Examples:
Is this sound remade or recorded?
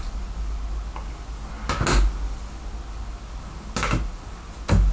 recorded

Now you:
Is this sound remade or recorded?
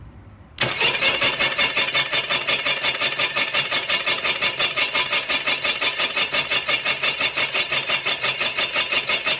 recorded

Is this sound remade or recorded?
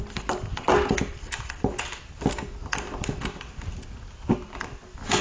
recorded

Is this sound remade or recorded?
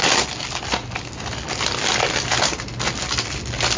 recorded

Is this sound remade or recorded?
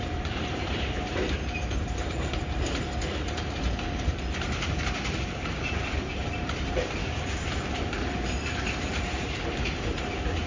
remade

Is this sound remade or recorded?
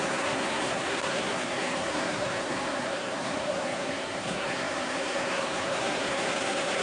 remade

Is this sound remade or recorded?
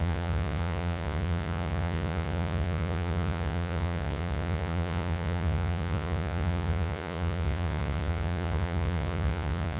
remade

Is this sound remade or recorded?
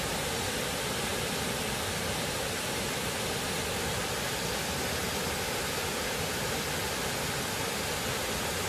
recorded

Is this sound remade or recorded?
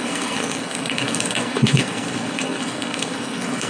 remade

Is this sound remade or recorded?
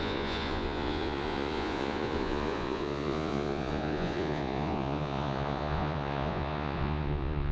remade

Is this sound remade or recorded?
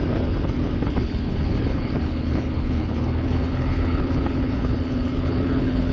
remade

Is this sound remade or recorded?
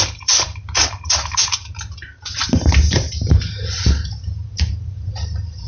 remade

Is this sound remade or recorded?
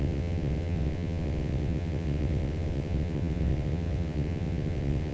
remade